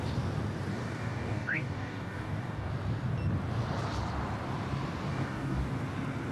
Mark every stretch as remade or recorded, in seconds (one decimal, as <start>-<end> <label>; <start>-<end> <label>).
0.0-0.7 recorded; 0.7-2.7 remade; 2.7-5.1 recorded; 5.1-5.6 remade; 5.6-6.3 recorded